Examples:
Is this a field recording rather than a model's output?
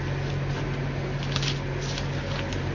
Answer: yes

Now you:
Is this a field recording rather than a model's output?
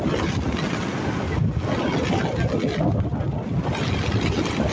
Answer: yes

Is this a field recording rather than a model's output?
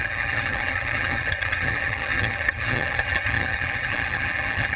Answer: no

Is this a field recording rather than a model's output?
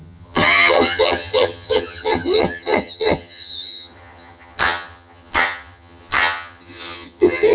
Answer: no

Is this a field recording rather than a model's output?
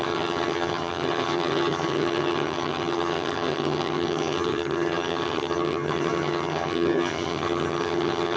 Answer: no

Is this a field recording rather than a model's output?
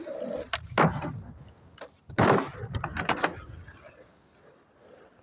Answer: yes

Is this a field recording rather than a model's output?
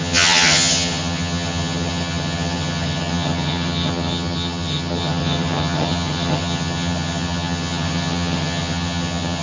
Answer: no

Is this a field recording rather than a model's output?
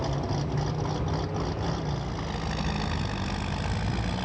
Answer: yes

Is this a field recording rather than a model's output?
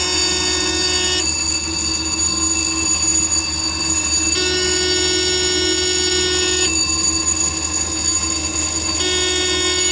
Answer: yes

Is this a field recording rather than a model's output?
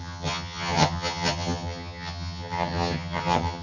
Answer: no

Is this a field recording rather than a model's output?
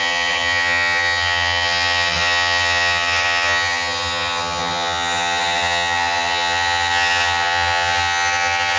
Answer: no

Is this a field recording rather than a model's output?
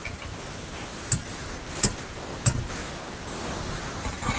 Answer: yes